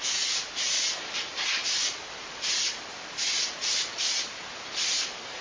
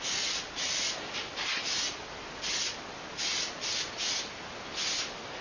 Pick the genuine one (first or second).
second